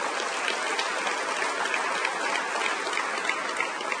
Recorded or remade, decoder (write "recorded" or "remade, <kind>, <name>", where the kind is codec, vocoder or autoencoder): recorded